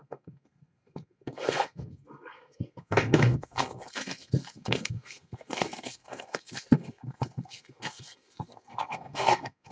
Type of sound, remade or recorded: remade